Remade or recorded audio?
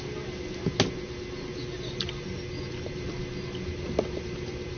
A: recorded